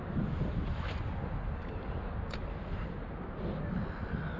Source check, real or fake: real